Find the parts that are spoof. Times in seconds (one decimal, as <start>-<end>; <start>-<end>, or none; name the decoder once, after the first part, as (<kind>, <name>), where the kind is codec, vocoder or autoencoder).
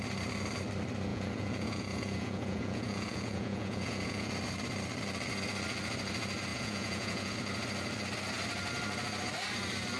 1.1-4.3 (vocoder, Vocos); 6.5-7.3